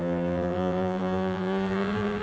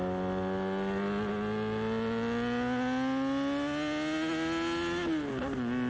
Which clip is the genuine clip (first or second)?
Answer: second